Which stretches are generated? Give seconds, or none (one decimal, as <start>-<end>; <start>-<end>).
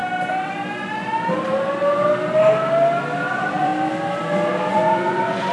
3.3-3.7; 4.7-5.5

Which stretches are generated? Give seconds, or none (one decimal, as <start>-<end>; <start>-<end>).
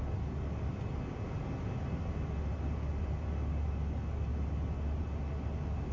none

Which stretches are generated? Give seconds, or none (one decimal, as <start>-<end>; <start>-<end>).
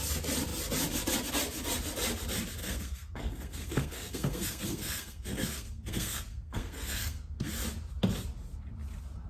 2.6-7.5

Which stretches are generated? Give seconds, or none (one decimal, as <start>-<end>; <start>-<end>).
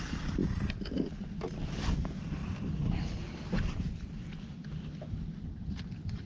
none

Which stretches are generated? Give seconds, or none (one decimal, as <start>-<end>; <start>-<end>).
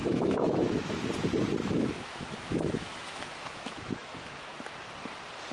0.0-0.9; 1.6-4.9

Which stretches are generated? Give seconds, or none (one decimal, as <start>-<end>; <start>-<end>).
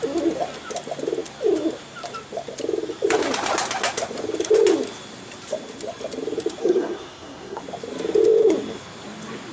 6.6-7.6